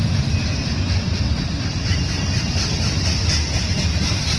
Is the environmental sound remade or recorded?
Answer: recorded